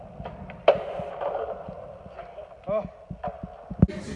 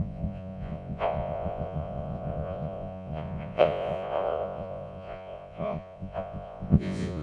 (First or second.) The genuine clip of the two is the first